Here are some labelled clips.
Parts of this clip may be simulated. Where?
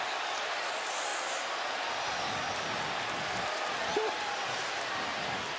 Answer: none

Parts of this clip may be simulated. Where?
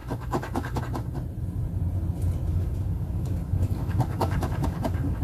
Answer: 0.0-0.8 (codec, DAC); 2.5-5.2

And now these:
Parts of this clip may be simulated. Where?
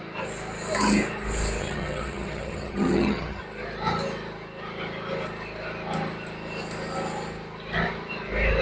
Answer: 1.6-3.4 (vocoder, HiFi-GAN)